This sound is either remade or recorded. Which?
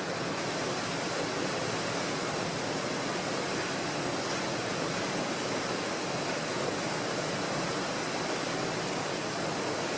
recorded